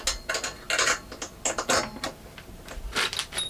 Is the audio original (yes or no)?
yes